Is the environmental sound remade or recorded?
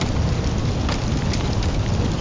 recorded